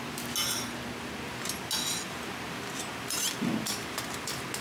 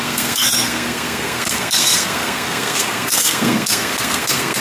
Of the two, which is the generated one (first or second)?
second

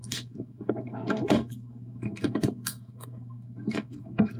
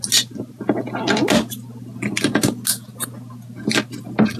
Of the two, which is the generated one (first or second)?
first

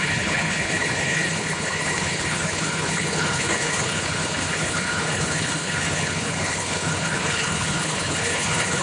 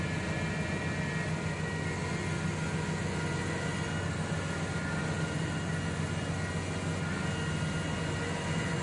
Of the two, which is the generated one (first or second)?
first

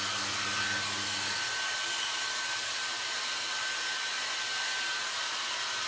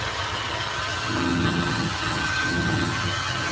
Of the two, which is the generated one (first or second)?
second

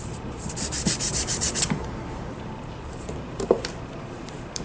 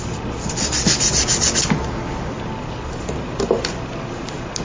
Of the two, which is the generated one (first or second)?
first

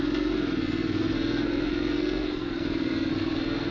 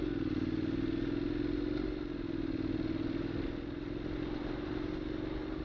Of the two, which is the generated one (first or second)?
first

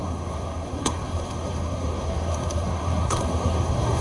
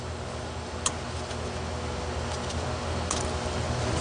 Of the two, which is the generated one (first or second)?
first